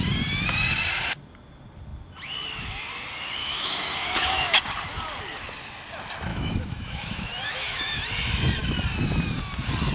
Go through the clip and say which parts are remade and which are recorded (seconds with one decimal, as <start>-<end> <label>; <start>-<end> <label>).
0.0-3.4 recorded; 3.4-4.6 remade; 4.6-6.3 recorded; 6.3-8.0 remade; 8.0-9.9 recorded